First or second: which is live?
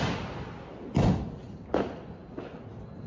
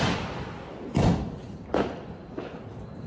first